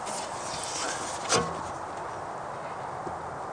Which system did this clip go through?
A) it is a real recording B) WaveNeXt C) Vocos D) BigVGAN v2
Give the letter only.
A